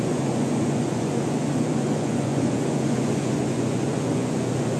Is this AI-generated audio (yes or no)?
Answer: yes